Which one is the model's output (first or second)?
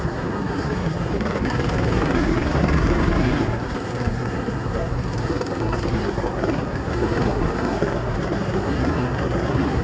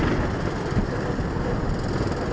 first